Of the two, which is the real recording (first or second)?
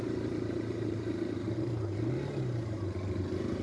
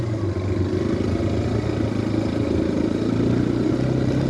second